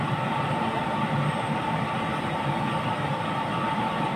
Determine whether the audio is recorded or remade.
recorded